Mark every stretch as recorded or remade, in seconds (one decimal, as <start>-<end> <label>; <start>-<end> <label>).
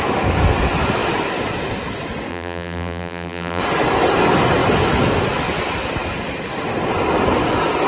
0.0-2.3 recorded; 2.3-3.6 remade; 3.6-7.9 recorded